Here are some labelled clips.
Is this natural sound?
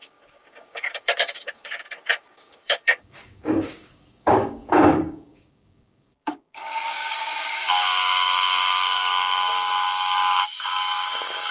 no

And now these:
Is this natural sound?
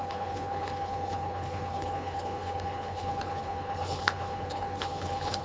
no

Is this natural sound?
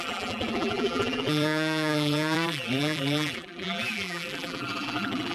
no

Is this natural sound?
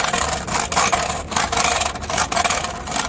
yes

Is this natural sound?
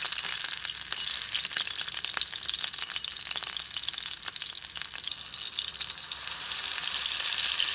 yes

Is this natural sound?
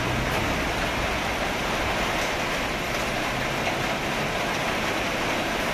yes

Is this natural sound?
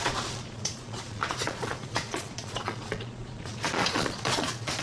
no